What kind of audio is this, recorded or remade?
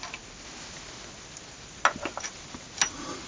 recorded